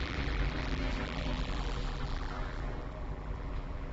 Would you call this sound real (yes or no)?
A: no